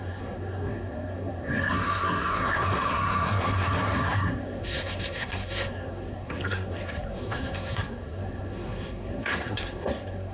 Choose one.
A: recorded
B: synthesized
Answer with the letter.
B